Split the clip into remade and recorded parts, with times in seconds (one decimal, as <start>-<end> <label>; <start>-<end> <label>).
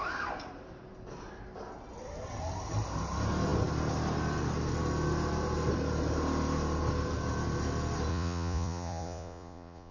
0.0-8.1 recorded; 8.1-9.9 remade